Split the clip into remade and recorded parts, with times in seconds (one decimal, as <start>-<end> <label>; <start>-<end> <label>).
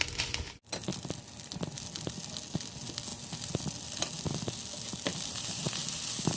0.0-6.4 recorded